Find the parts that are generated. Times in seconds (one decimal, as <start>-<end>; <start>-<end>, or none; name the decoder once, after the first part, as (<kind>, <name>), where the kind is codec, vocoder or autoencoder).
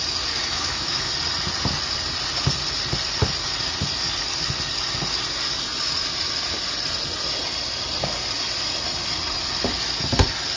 0.5-1.1 (autoencoder, DAC-VAE)